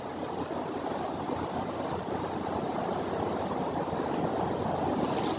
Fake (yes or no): no